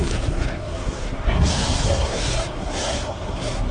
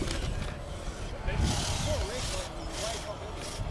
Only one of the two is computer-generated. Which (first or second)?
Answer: first